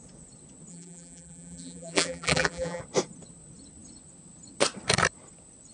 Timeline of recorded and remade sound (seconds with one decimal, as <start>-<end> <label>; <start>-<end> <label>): 0.0-0.7 recorded; 0.7-2.8 remade; 2.8-5.7 recorded